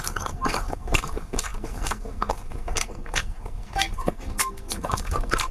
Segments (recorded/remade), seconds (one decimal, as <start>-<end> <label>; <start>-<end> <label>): 0.0-5.5 remade